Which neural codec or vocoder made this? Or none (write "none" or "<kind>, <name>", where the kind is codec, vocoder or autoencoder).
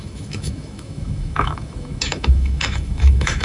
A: autoencoder, DAC-VAE